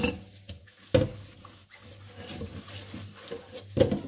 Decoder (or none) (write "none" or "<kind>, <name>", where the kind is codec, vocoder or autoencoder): none